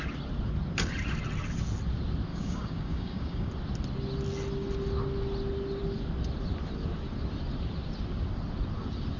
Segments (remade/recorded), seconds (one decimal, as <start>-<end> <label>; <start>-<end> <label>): 0.0-2.3 recorded; 2.3-3.5 remade; 3.5-9.2 recorded